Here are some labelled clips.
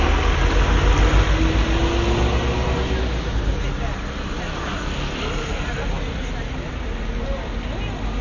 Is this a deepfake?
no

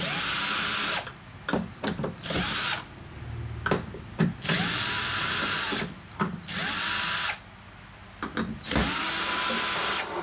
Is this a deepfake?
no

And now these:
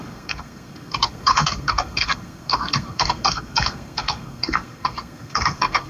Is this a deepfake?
yes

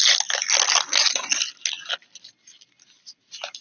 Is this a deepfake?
no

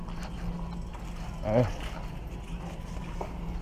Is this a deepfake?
no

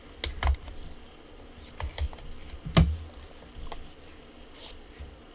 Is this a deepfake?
no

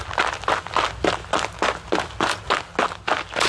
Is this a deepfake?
no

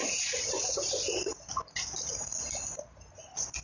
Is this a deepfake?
no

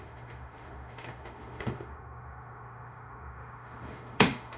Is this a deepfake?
yes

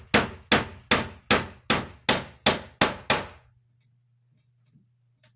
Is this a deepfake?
no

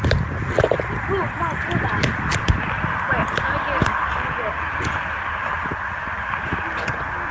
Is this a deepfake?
no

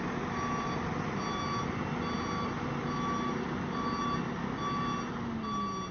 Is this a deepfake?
no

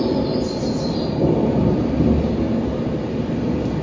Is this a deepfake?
no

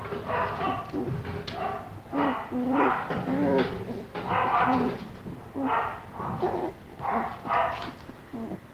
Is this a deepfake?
no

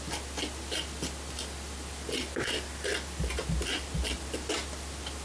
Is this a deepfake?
no